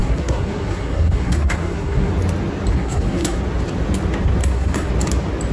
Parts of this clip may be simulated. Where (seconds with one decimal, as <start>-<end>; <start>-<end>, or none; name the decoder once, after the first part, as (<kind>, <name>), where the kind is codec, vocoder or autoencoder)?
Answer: 0.0-2.1 (codec, SNAC); 2.7-3.4; 4.4-4.9

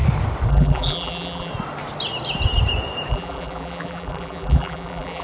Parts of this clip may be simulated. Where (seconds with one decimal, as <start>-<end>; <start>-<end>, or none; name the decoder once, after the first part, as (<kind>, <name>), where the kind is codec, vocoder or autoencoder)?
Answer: 0.5-1.5 (vocoder, BigVGAN v2); 3.1-5.2